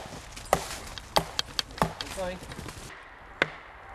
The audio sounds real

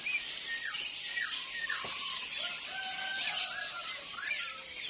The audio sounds real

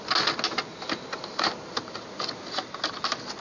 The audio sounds real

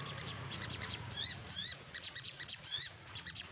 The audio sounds fake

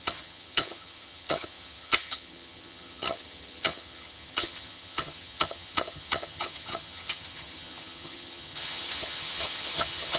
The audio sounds fake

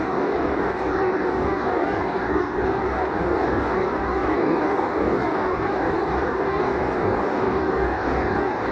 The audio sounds fake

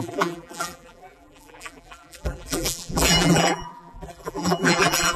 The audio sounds fake